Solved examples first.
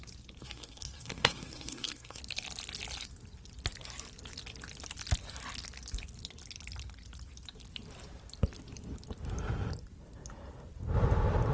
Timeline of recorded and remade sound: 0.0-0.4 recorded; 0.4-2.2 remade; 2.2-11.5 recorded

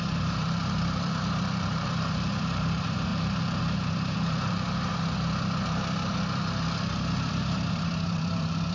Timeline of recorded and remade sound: 0.0-3.1 remade; 3.1-3.6 recorded; 3.6-4.9 remade; 4.9-7.3 recorded; 7.3-8.7 remade

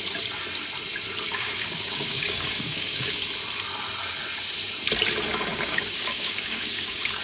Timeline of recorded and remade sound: 0.0-1.3 recorded; 1.3-3.1 remade; 3.1-5.5 recorded; 5.5-7.2 remade

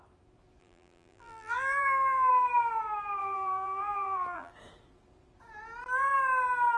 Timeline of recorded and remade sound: 0.0-0.6 recorded; 0.6-2.3 remade; 2.3-3.2 recorded; 3.2-4.5 remade; 4.5-6.8 recorded

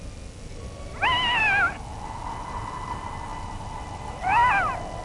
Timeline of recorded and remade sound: 0.0-0.5 recorded; 0.5-1.4 remade; 1.4-3.3 recorded; 3.3-4.5 remade; 4.5-5.0 recorded

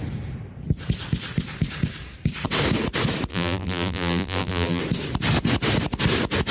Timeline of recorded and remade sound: 0.0-3.3 recorded; 3.3-4.8 remade; 4.8-6.5 recorded